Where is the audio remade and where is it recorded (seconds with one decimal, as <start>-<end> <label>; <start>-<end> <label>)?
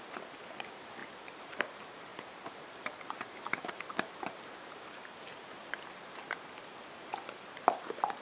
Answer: 0.0-5.6 remade; 5.6-7.5 recorded; 7.5-8.2 remade